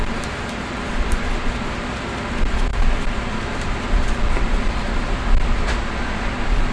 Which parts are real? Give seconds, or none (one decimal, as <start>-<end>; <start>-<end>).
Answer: 1.2-2.7; 4.2-6.7